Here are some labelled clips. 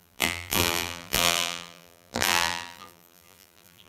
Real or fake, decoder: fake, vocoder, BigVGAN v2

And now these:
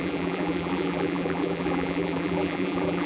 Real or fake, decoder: fake, vocoder, BigVGAN v2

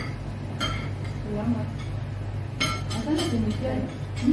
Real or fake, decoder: real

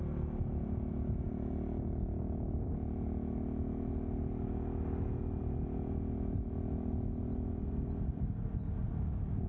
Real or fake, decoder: real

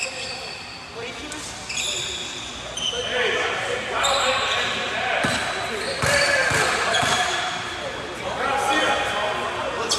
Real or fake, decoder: real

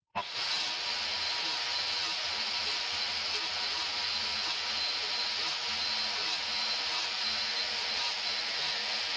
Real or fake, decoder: real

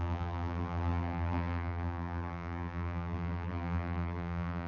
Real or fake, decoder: fake, vocoder, BigVGAN v2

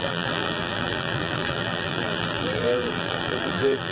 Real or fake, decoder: fake, vocoder, BigVGAN v2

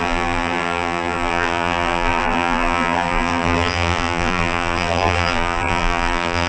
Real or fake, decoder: fake, vocoder, BigVGAN v2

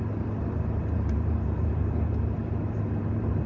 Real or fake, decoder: fake, vocoder, BigVGAN v2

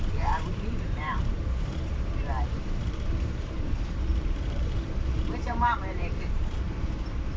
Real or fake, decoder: fake, vocoder, BigVGAN v2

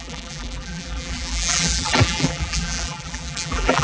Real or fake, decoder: fake, vocoder, BigVGAN v2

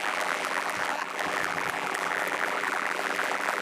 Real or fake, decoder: fake, vocoder, BigVGAN v2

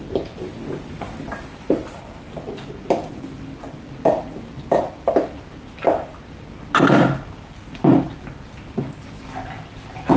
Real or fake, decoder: fake, vocoder, BigVGAN v2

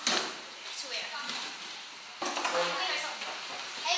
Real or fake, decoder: real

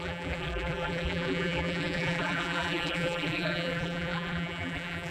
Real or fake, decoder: fake, vocoder, BigVGAN v2